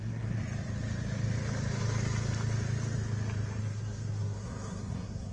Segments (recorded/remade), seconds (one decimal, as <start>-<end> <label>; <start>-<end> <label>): 0.0-0.4 remade; 0.4-3.6 recorded; 3.6-5.3 remade